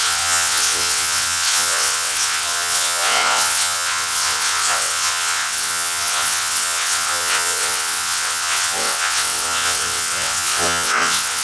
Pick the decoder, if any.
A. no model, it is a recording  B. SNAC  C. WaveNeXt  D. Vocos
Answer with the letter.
C